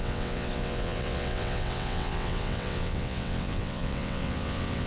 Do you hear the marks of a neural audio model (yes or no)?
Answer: yes